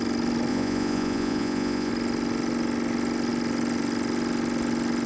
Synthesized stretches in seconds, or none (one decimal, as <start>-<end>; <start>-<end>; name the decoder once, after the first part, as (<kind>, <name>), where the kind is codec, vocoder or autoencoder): 0.5-1.9 (vocoder, Vocos)

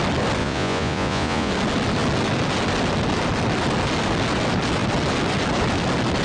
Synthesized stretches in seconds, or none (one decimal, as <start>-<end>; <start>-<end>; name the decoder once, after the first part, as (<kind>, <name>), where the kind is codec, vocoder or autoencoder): 0.4-1.5 (vocoder, Vocos)

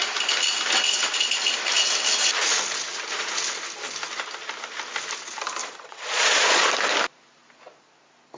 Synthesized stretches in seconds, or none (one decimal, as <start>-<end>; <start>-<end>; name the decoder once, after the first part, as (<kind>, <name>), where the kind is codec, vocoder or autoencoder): 5.6-6.7 (vocoder, Vocos)

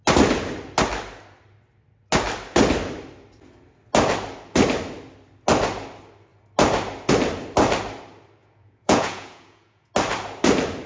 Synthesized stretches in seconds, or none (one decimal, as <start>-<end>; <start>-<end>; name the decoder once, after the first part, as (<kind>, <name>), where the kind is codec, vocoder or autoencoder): 8.4-9.9 (vocoder, Vocos)

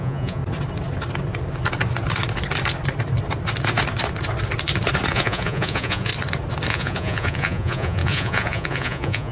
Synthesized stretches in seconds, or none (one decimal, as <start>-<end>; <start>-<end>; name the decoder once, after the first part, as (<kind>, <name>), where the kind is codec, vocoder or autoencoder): 0.0-0.4 (vocoder, Vocos); 5.1-6.1; 6.7-9.3

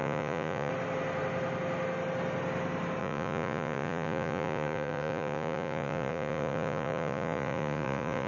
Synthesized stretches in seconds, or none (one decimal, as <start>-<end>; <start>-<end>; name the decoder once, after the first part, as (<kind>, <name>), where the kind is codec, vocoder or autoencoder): 0.0-0.7 (vocoder, Vocos); 3.0-8.3